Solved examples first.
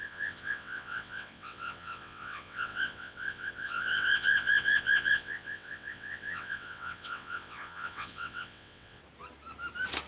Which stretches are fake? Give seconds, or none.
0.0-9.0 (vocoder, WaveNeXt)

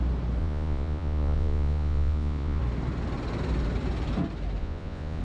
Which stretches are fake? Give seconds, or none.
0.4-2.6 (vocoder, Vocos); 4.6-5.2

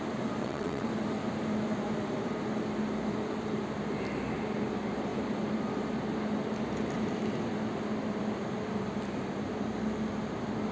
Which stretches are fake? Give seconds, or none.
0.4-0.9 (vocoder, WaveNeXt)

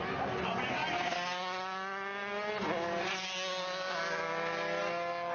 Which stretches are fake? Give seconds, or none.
none